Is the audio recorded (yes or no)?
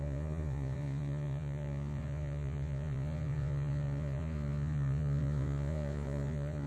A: no